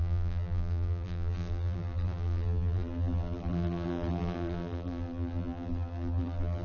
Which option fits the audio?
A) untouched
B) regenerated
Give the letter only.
B